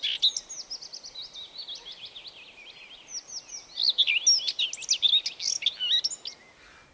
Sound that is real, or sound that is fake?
real